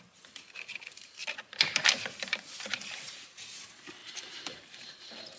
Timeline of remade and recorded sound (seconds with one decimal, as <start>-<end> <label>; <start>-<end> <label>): 0.0-5.4 remade